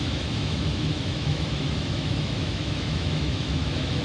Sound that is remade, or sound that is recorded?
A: remade